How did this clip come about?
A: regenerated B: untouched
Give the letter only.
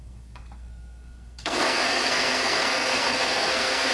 A